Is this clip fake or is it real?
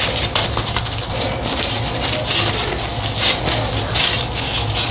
real